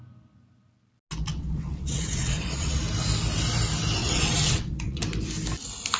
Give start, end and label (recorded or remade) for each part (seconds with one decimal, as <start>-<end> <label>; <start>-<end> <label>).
0.0-1.3 recorded; 1.3-2.8 remade; 2.8-4.0 recorded; 4.0-5.0 remade; 5.0-6.0 recorded